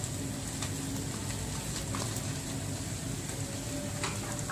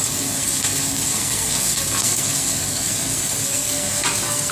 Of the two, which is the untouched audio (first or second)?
first